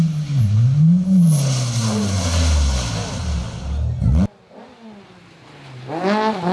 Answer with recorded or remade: recorded